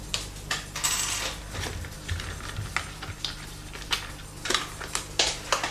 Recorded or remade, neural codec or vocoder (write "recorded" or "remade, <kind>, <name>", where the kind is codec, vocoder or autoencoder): recorded